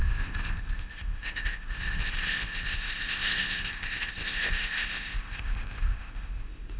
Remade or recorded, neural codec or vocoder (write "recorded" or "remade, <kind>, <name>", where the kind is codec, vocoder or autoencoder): remade, codec, ZipCodec